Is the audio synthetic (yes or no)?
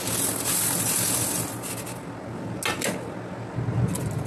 no